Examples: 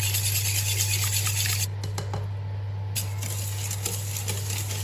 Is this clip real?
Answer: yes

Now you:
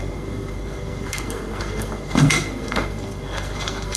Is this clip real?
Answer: no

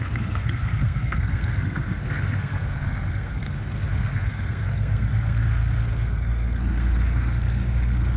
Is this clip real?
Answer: no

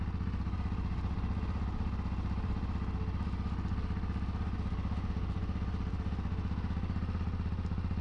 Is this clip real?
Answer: yes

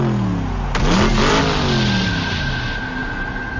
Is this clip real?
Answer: yes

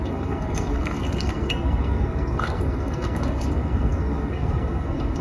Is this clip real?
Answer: no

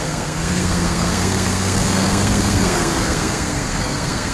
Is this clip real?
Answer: no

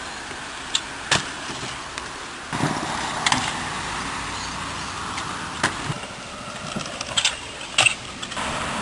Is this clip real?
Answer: yes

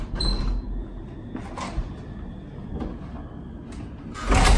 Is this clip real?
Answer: yes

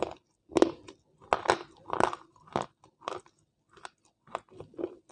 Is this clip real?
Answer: yes